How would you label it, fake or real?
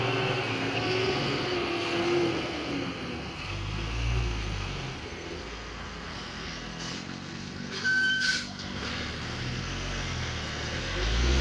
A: fake